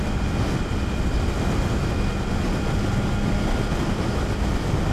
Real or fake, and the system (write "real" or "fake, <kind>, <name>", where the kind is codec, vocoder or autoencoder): real